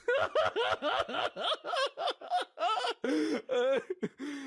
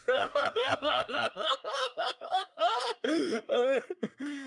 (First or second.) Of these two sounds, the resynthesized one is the second